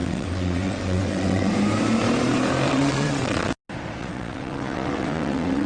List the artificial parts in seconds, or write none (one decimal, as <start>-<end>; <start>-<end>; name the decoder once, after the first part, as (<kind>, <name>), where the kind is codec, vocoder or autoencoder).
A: 0.0-1.5 (vocoder, WaveNeXt); 2.7-3.5; 4.0-5.7